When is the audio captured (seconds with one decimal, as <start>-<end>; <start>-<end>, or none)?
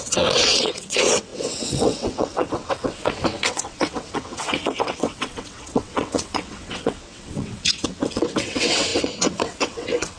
none